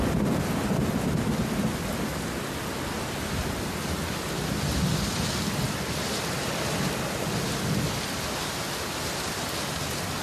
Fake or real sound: real